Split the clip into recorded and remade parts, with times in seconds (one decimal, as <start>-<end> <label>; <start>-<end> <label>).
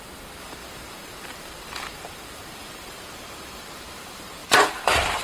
0.0-5.2 remade